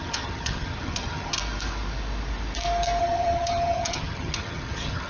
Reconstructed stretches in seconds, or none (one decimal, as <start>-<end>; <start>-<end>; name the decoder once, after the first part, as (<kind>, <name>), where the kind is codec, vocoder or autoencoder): 0.0-1.4 (vocoder, HiFi-GAN); 3.0-5.1